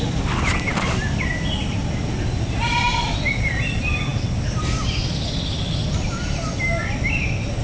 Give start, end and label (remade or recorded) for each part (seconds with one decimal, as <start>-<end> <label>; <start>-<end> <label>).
0.0-7.6 recorded